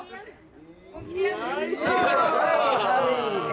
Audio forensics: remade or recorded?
recorded